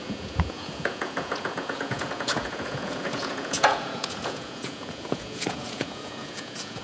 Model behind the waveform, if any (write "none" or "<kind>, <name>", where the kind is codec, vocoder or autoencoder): vocoder, Vocos